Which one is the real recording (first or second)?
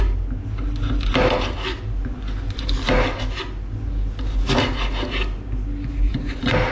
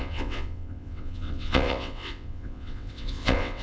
first